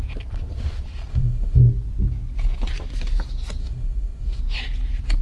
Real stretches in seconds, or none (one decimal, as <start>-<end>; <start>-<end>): 0.0-1.1; 1.6-3.6; 4.4-5.2